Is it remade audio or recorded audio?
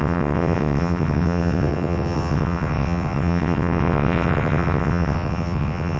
remade